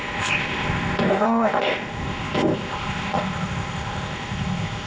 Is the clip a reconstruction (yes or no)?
yes